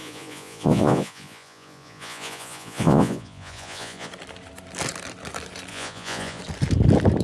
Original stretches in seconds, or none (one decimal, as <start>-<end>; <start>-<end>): 4.1-5.7; 6.4-7.2